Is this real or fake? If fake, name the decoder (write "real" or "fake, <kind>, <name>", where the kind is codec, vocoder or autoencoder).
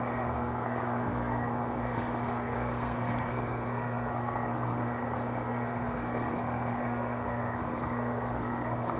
fake, codec, SNAC